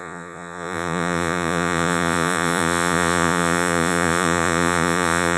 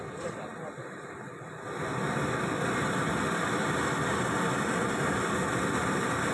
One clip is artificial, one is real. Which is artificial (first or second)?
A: first